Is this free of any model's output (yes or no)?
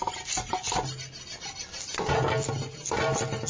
yes